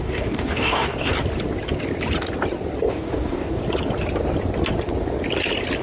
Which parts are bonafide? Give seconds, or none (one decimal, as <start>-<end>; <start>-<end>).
1.1-2.9; 3.6-5.8